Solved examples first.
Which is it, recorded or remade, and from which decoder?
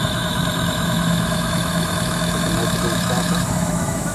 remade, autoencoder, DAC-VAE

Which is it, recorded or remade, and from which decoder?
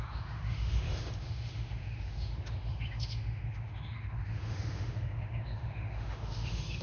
remade, autoencoder, DAC-VAE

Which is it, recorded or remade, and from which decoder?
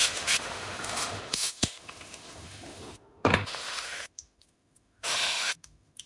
remade, autoencoder, DAC-VAE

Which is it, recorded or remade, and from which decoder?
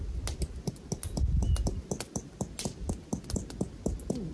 recorded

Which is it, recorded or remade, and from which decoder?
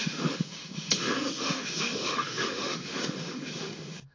remade, autoencoder, DAC-VAE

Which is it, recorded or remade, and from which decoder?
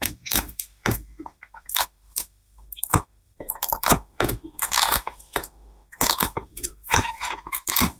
remade, autoencoder, DAC-VAE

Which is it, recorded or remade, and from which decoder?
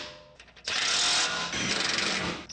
recorded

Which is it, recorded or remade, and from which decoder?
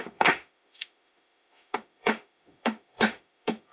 remade, autoencoder, DAC-VAE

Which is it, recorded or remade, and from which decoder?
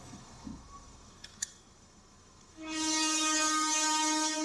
remade, autoencoder, DAC-VAE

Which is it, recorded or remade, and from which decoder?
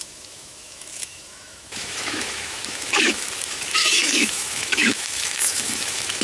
remade, autoencoder, DAC-VAE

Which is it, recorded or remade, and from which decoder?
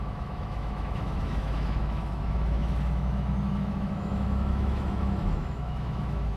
remade, autoencoder, DAC-VAE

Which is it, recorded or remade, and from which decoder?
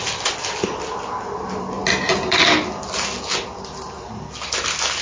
recorded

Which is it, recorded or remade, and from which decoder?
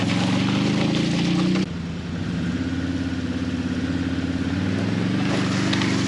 recorded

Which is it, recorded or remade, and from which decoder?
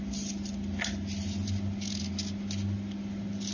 recorded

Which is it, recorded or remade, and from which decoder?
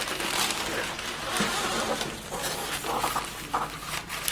recorded